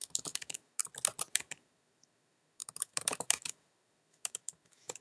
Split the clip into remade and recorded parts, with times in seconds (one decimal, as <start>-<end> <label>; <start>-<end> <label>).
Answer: 0.0-0.8 remade; 0.8-1.3 recorded; 1.3-5.0 remade